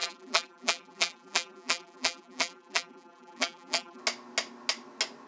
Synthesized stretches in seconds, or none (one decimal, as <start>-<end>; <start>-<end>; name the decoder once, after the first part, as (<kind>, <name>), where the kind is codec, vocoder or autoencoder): 0.0-4.0 (vocoder, BigVGAN v2)